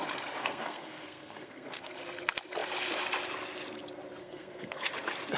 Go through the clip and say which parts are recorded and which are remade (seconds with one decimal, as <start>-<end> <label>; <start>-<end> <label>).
0.0-0.4 recorded; 0.4-1.9 remade; 1.9-4.2 recorded; 4.2-4.9 remade; 4.9-5.4 recorded